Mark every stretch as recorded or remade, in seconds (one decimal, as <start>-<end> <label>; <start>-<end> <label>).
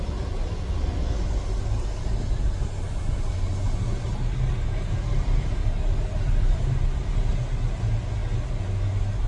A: 0.0-9.3 recorded